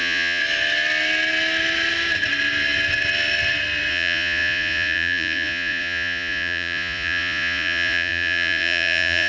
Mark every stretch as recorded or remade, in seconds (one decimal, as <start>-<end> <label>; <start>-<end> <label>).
0.0-0.4 remade; 0.4-3.9 recorded; 3.9-9.3 remade